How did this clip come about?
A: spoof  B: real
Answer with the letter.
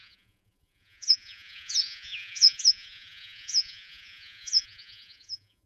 A